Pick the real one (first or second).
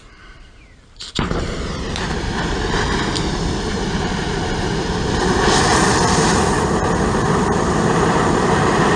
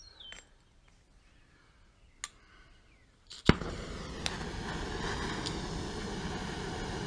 second